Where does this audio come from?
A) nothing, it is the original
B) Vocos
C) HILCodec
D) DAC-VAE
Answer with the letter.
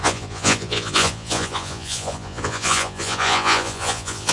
B